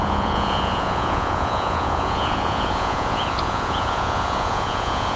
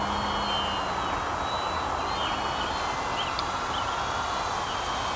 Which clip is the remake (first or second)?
first